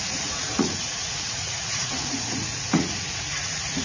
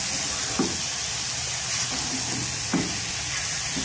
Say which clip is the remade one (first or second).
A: first